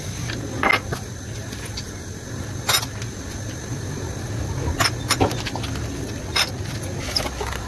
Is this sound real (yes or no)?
yes